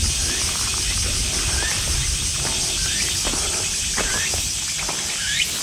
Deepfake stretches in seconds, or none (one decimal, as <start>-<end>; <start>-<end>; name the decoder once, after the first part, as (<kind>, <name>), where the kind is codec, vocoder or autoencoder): 0.7-3.2 (vocoder, BigVGAN v2)